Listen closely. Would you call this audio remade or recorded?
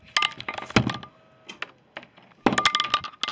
recorded